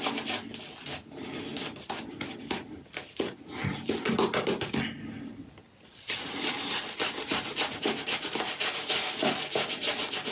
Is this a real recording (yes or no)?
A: yes